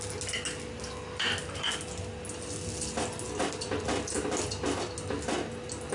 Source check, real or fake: real